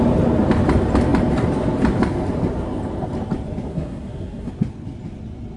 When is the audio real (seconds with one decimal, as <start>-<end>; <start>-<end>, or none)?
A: 0.0-3.7; 4.5-5.6